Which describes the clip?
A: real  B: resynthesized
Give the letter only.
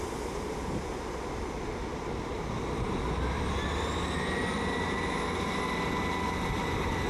A